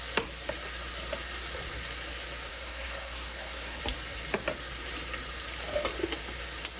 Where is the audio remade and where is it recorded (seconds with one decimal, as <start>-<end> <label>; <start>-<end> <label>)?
0.0-2.5 recorded; 2.5-3.8 remade; 3.8-6.8 recorded